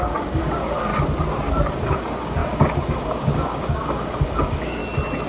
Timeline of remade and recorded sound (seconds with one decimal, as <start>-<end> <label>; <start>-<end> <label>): 0.0-0.9 remade; 0.9-1.7 recorded; 1.7-4.8 remade; 4.8-5.3 recorded